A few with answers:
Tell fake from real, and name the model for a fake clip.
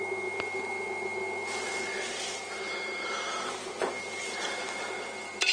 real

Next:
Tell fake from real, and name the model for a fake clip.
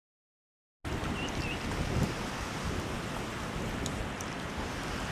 real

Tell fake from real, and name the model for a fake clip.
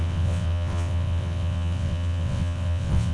fake, vocoder, WaveNeXt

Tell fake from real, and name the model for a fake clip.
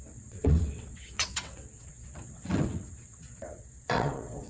fake, vocoder, WaveNeXt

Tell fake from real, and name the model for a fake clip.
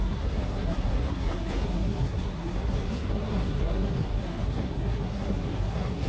fake, codec, SNAC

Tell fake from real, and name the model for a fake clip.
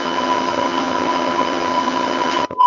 fake, vocoder, HiFi-GAN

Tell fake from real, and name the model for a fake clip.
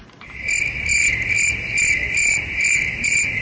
real